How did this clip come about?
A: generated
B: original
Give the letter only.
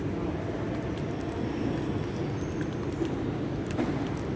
B